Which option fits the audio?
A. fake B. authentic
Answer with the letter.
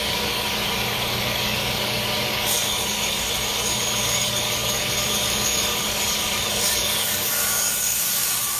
A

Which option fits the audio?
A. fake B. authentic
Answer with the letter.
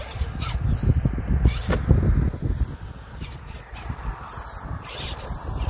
B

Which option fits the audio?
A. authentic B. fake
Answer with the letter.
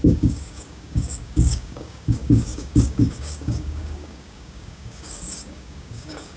B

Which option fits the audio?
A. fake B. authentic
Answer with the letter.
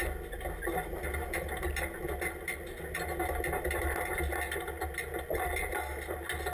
B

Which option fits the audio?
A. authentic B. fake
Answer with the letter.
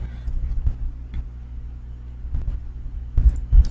A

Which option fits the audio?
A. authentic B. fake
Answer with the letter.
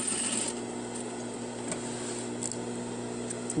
A